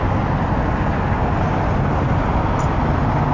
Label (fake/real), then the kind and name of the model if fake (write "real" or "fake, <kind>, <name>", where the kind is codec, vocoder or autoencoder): real